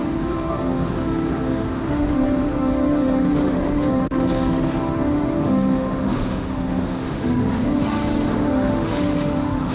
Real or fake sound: fake